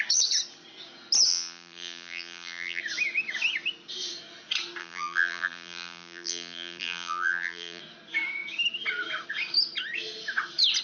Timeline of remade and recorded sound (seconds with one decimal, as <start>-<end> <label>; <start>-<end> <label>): 0.0-1.3 recorded; 1.3-2.8 remade; 2.8-4.8 recorded; 4.8-7.8 remade; 7.8-10.8 recorded